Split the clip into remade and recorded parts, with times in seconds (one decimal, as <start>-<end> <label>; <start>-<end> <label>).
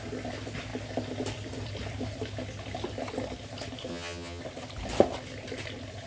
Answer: 0.0-3.9 recorded; 3.9-4.4 remade; 4.4-6.1 recorded